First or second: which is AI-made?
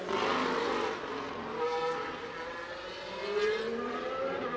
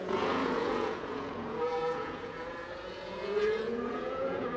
second